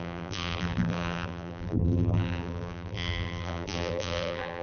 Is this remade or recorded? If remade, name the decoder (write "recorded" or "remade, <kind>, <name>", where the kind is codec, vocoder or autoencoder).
remade, vocoder, BigVGAN v2